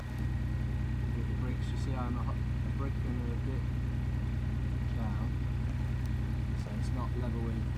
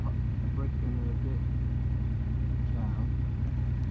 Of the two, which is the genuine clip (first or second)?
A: first